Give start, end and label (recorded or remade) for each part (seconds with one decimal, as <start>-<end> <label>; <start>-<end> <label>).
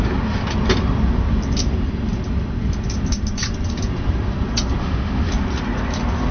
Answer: 0.0-4.8 recorded; 4.8-5.3 remade; 5.3-6.3 recorded